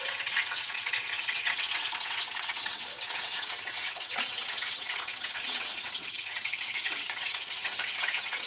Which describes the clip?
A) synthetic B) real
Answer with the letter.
A